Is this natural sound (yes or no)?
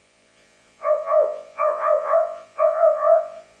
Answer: no